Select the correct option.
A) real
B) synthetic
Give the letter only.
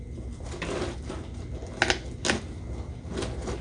A